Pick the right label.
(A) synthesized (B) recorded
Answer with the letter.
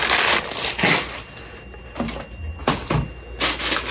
B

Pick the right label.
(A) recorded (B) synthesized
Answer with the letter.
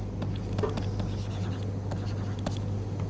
A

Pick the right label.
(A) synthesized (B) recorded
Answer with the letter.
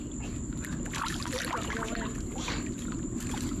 B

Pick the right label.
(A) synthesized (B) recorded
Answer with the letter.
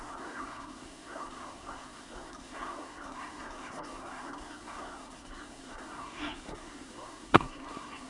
A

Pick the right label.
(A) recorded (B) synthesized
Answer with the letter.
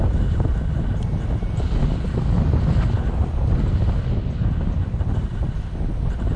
A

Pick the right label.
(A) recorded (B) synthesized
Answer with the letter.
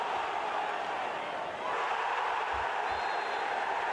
A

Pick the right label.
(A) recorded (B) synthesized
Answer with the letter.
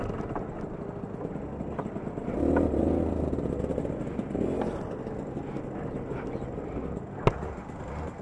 A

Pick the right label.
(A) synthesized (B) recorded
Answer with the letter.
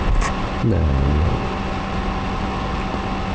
B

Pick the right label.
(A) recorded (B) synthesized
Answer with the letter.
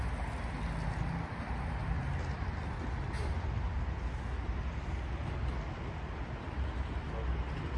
A